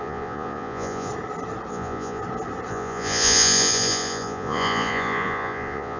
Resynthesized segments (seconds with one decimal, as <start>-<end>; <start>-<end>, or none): 0.0-1.1; 1.7-2.2; 2.7-6.0